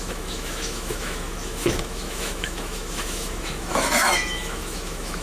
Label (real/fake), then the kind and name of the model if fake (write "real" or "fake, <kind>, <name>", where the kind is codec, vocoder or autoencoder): fake, autoencoder, DAC-VAE